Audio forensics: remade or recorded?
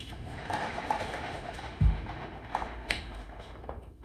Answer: remade